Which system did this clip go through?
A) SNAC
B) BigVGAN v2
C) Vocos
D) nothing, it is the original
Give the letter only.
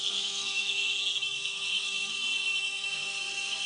A